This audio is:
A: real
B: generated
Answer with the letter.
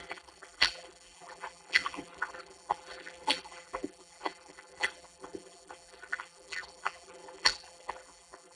B